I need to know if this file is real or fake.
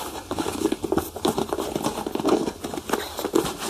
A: real